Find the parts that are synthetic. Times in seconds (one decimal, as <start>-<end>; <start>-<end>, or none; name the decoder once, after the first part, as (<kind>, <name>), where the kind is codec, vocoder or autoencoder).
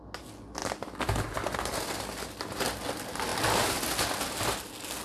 none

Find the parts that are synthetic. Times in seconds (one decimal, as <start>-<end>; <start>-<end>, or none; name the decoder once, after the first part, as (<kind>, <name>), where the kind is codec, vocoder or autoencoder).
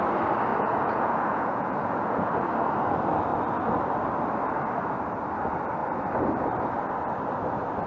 0.5-2.3 (vocoder, Vocos)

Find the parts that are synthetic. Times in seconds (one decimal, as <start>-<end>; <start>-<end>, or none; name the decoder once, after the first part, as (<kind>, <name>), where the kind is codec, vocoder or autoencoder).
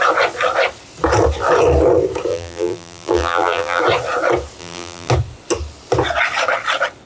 2.3-3.8 (vocoder, BigVGAN v2); 4.6-5.1